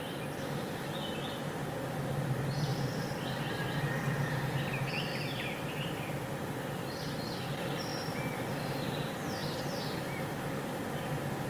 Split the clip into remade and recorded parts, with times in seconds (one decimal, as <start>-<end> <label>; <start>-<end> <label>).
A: 0.0-2.7 recorded; 2.7-3.8 remade; 3.8-5.1 recorded; 5.1-6.3 remade; 6.3-7.9 recorded; 7.9-8.9 remade; 8.9-9.4 recorded; 9.4-10.4 remade; 10.4-11.5 recorded